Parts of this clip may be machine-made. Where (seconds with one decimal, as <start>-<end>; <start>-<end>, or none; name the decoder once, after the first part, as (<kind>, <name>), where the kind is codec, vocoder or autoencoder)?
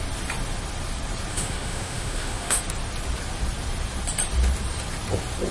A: 1.3-2.6 (autoencoder, DAC-VAE)